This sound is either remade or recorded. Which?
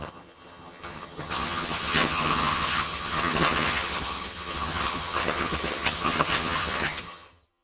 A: remade